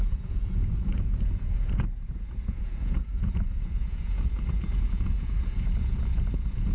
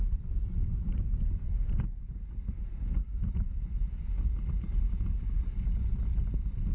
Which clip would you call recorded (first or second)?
second